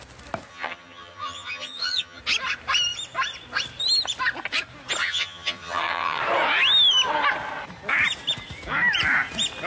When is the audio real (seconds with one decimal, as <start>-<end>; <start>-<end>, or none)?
0.0-0.5; 2.2-5.0; 6.2-9.7